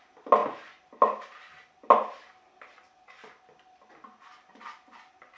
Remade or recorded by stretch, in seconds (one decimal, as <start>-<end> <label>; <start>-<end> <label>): 0.0-5.4 recorded